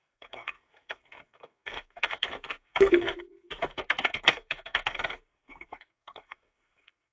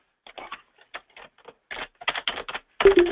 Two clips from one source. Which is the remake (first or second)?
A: first